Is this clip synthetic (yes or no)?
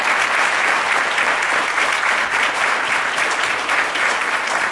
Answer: yes